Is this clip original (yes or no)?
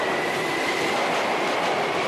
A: yes